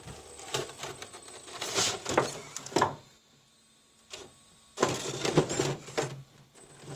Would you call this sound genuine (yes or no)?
yes